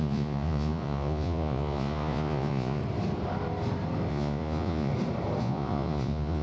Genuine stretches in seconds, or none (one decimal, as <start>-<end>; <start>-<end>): 2.8-4.1; 4.9-5.4